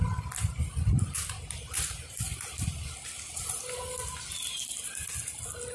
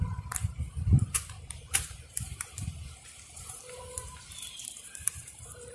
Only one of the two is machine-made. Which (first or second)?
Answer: second